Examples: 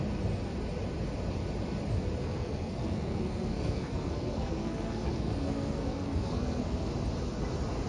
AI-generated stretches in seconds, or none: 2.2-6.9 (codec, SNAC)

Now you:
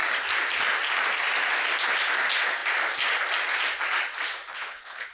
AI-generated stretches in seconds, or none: 4.5-5.1 (codec, HILCodec)

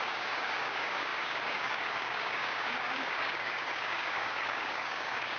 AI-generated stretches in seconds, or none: 0.0-5.4 (codec, DAC)

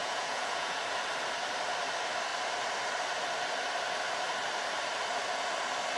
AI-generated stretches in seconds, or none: 0.0-0.8 (vocoder, Vocos)

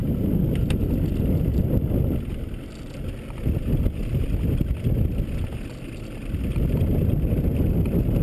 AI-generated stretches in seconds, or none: none

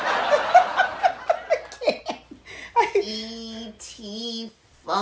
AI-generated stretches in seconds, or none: none

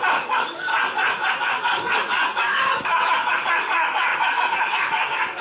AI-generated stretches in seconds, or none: 0.0-0.7 (codec, DAC); 1.3-5.4